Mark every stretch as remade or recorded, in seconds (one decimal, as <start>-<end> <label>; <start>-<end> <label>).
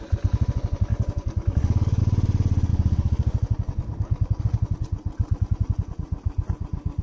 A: 0.0-0.9 recorded; 0.9-2.0 remade; 2.0-2.7 recorded; 2.7-4.4 remade; 4.4-7.0 recorded